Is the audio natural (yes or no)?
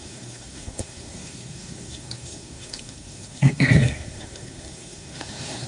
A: no